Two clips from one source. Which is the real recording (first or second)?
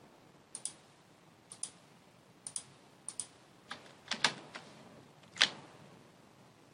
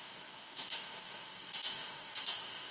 first